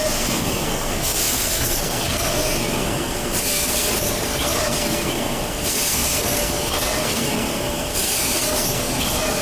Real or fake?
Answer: fake